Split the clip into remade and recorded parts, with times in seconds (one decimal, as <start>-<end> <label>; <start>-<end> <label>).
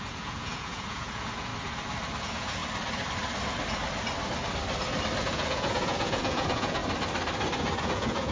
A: 0.0-1.5 remade; 1.5-2.2 recorded; 2.2-2.6 remade; 2.6-5.2 recorded; 5.2-6.8 remade; 6.8-7.8 recorded; 7.8-8.3 remade